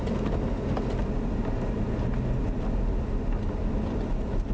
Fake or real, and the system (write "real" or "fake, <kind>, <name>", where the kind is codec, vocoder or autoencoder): real